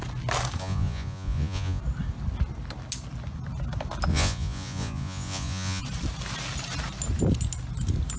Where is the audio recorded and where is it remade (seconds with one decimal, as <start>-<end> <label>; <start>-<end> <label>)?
0.0-0.6 recorded; 0.6-1.8 remade; 1.8-4.1 recorded; 4.1-5.8 remade; 5.8-8.2 recorded